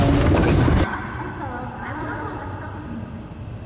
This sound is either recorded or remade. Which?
recorded